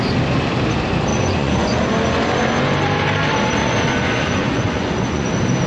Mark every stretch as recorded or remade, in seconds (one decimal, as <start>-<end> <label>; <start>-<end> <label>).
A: 0.0-1.1 recorded; 1.1-1.8 remade; 1.8-3.6 recorded; 3.6-5.3 remade; 5.3-5.7 recorded